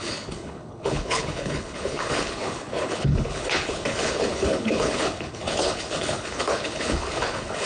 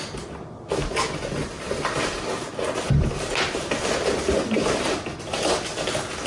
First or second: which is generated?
first